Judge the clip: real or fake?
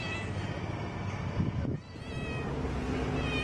real